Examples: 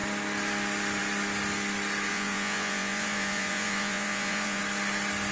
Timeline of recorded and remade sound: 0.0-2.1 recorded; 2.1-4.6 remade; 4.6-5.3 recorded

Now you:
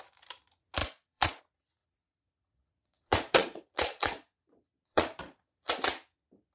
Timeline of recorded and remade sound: 0.0-0.8 recorded; 0.8-1.4 remade; 1.4-1.8 recorded; 1.8-5.7 remade; 5.7-6.5 recorded